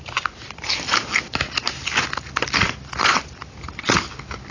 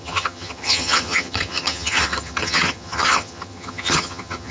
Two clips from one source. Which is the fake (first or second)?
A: second